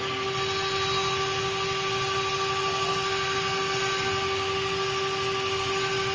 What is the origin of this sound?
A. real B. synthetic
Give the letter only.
A